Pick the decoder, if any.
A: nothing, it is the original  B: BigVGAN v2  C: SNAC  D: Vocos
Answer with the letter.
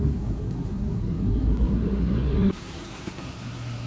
C